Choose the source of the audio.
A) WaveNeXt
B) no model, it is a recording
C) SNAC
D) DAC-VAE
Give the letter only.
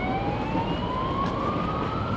B